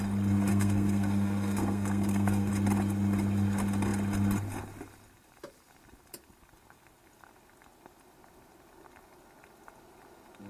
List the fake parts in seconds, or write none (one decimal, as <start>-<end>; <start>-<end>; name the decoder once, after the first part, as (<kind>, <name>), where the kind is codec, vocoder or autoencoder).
0.5-2.5 (codec, SNAC)